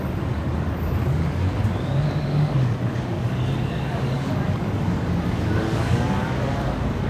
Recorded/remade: remade